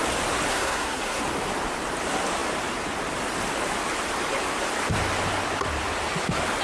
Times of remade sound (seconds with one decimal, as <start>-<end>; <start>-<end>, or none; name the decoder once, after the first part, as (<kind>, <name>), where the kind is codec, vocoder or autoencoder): 0.5-1.2 (codec, SNAC)